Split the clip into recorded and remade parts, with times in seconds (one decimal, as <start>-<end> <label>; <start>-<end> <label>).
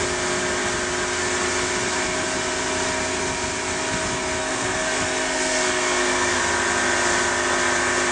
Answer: 0.0-4.4 recorded; 4.4-6.4 remade; 6.4-8.1 recorded